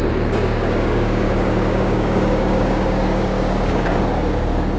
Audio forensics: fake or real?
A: fake